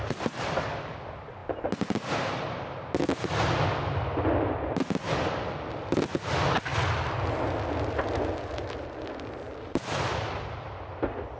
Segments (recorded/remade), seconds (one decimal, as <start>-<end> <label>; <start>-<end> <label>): 0.0-11.4 recorded